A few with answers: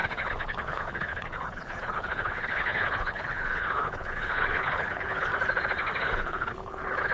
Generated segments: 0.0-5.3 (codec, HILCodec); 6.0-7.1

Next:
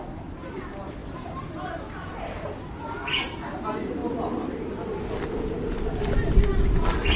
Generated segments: none

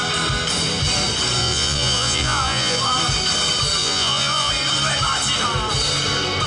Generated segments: 1.4-2.8 (vocoder, Vocos); 3.8-4.5